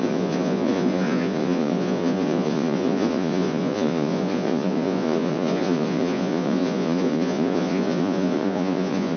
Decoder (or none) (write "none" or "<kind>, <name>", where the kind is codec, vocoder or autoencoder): vocoder, Vocos